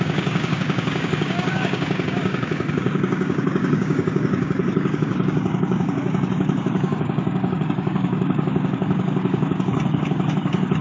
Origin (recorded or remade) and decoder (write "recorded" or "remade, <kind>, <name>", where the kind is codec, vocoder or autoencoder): remade, codec, DAC